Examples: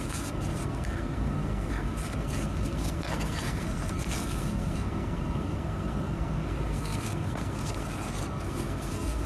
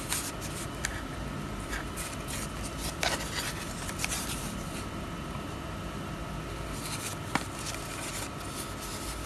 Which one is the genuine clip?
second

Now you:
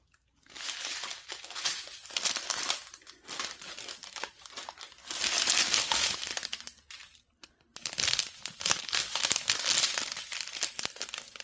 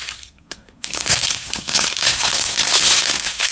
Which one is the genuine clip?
first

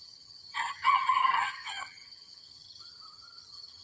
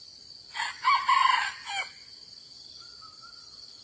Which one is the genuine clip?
second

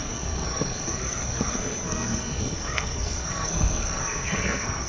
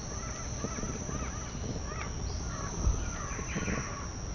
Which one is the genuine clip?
second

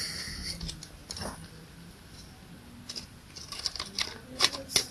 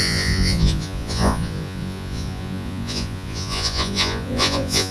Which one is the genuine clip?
first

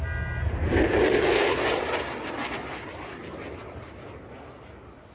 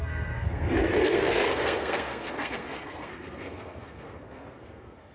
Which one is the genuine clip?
first